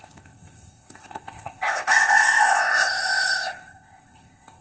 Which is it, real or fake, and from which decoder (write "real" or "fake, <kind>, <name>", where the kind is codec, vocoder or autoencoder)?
fake, codec, ZipCodec